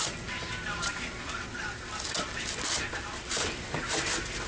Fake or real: fake